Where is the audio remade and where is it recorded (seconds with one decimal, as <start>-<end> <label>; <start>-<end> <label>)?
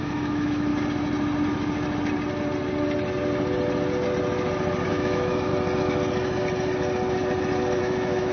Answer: 0.0-0.7 remade; 0.7-4.9 recorded; 4.9-5.5 remade; 5.5-7.8 recorded; 7.8-8.3 remade